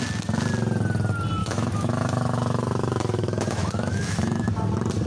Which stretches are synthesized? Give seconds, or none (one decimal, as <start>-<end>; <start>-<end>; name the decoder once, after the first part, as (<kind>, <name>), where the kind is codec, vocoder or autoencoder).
1.4-4.5 (autoencoder, DAC-VAE)